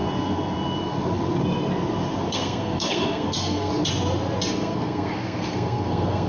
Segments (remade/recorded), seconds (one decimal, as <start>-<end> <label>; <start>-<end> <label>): 0.0-2.3 recorded; 2.3-3.7 remade; 3.7-4.5 recorded; 4.5-6.3 remade